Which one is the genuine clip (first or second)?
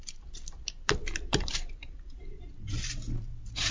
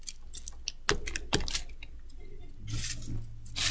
second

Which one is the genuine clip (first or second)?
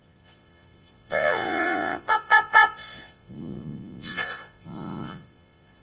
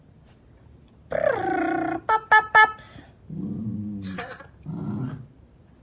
second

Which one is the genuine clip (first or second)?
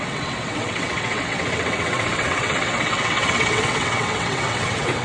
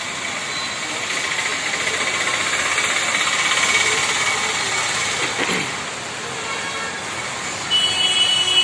second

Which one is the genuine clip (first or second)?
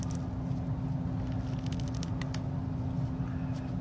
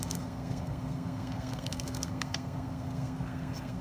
first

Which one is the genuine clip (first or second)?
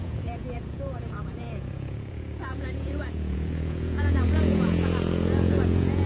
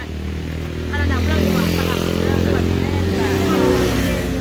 second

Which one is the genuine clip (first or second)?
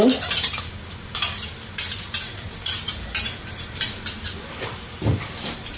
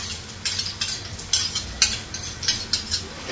second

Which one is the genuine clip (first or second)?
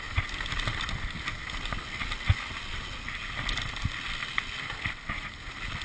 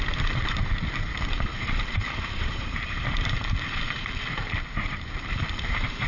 first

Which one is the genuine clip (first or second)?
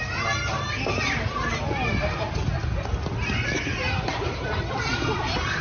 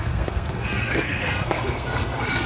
first